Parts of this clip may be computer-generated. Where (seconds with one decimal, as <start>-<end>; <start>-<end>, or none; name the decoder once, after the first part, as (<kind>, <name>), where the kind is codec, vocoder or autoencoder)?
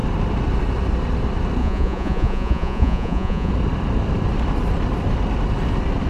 1.6-3.5 (vocoder, Vocos)